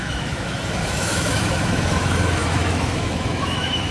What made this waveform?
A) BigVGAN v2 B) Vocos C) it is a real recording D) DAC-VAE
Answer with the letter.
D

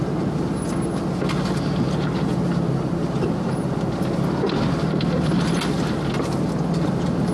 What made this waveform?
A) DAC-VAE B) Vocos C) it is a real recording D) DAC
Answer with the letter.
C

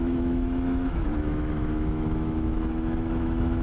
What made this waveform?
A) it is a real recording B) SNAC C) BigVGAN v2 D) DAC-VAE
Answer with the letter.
D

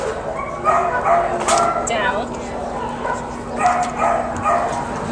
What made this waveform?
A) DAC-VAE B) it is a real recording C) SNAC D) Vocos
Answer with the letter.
B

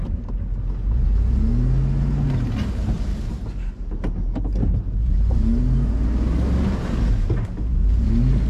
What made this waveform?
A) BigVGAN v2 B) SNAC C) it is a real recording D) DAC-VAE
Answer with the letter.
C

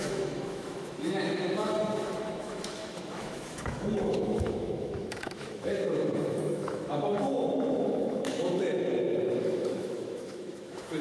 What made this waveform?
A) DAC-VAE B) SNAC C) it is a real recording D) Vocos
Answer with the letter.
A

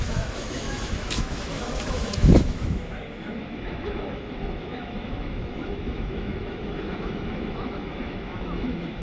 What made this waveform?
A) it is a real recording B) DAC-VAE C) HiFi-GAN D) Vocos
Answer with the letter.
B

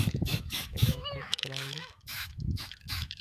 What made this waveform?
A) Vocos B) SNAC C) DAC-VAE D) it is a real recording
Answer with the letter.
C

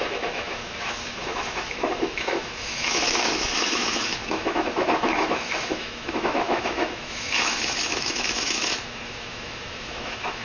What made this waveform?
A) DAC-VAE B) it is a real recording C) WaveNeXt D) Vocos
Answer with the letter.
A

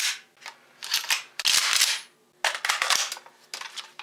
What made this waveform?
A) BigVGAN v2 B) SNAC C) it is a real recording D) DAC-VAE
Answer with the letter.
C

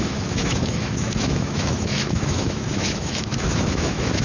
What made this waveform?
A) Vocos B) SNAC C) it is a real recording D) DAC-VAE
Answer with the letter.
D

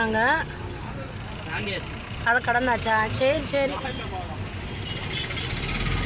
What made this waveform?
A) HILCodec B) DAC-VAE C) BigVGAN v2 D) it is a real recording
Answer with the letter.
D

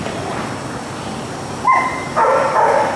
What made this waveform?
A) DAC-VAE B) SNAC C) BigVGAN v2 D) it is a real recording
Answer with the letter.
D